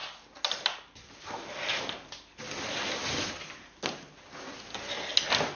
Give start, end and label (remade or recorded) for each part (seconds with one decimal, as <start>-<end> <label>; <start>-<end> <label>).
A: 0.0-5.6 recorded

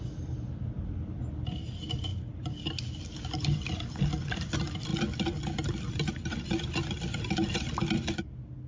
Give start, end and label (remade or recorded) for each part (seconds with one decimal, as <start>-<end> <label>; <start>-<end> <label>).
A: 0.0-8.7 recorded

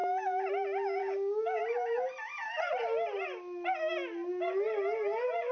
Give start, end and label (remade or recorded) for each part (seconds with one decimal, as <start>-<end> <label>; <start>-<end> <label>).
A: 0.0-1.0 recorded; 1.0-1.6 remade; 1.6-5.5 recorded